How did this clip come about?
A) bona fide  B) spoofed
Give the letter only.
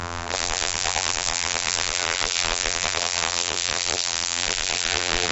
B